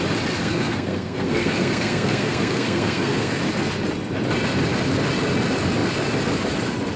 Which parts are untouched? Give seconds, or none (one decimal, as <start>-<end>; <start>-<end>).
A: 0.0-0.4; 3.4-7.0